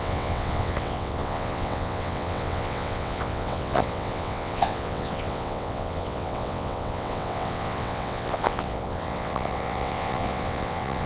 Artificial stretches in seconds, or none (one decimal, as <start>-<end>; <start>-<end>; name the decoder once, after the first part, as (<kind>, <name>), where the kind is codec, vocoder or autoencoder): 0.0-11.1 (vocoder, WaveNeXt)

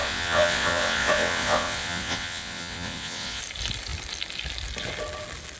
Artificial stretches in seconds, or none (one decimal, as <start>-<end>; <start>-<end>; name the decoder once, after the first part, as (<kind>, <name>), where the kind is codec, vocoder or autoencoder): 0.0-3.4 (vocoder, WaveNeXt)

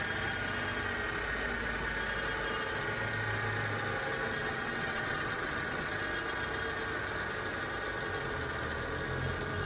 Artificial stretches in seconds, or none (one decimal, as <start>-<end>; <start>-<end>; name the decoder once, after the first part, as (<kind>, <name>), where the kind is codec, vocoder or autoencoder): 4.4-5.9 (vocoder, WaveNeXt)

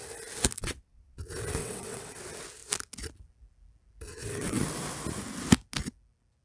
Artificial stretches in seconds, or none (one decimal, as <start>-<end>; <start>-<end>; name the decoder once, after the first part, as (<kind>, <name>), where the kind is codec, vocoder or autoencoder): 0.6-1.2 (vocoder, WaveNeXt); 1.6-2.2; 4.1-4.6

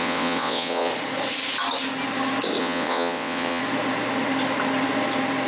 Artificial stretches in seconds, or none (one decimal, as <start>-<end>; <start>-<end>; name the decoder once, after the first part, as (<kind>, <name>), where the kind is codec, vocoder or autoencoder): 0.0-0.9 (vocoder, WaveNeXt); 2.6-3.6

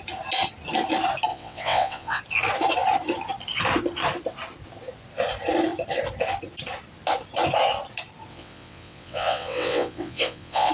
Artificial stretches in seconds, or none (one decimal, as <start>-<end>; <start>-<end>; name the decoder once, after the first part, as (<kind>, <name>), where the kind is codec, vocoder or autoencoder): 1.3-2.2 (vocoder, WaveNeXt); 8.3-10.7